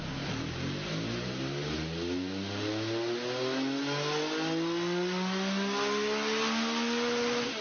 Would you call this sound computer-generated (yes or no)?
no